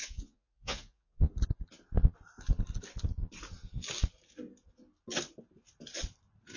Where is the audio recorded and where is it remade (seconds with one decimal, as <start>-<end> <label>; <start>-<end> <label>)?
0.0-1.3 remade; 1.3-6.6 recorded